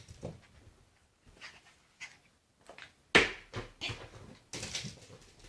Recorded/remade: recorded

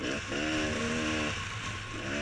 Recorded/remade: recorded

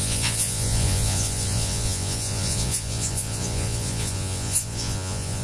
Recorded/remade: remade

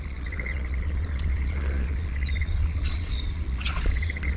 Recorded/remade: remade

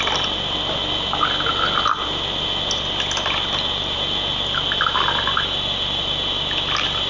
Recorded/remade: recorded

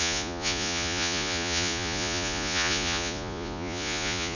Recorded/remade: remade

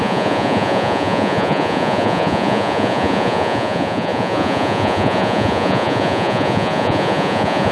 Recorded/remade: remade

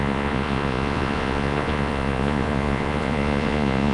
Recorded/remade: remade